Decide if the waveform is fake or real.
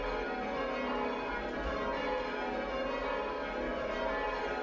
real